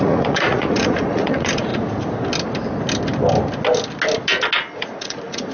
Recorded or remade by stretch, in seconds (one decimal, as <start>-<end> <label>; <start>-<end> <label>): 0.0-1.7 remade; 1.7-4.8 recorded; 4.8-5.5 remade